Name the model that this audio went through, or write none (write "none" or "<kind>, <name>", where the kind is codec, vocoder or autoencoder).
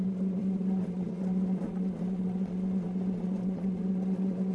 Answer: vocoder, Vocos